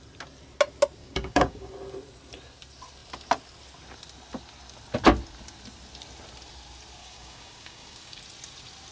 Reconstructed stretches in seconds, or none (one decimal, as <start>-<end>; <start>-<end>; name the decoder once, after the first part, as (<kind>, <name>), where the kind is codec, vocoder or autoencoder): 1.0-1.7 (codec, DAC); 7.0-8.2